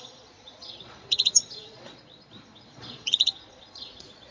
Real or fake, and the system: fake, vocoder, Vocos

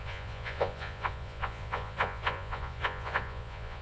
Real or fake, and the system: fake, vocoder, Vocos